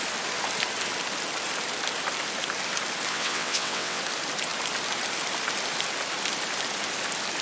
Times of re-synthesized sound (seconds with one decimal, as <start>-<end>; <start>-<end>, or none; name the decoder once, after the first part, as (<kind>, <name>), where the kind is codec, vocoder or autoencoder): 3.1-4.0 (vocoder, WaveNeXt)